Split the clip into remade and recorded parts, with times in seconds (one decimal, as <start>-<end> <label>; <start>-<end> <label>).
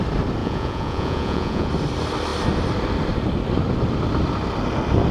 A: 0.0-0.4 recorded; 0.4-1.7 remade; 1.7-5.1 recorded